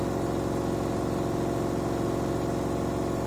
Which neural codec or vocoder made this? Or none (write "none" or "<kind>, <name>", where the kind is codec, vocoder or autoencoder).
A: none